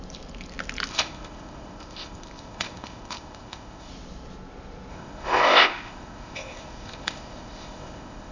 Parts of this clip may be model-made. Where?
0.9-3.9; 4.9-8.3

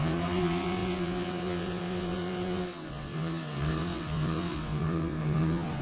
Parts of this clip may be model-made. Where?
0.0-5.8

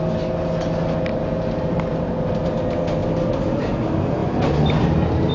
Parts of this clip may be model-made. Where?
1.1-2.1

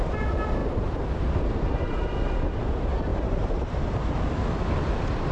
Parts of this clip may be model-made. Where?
0.6-1.4; 3.1-4.2

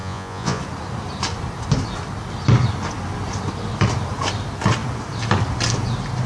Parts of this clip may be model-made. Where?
0.0-0.6